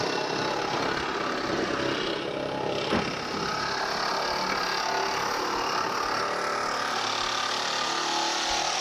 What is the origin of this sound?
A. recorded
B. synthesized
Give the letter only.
A